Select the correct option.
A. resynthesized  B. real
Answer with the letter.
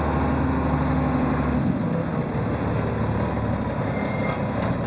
B